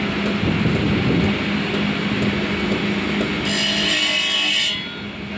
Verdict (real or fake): real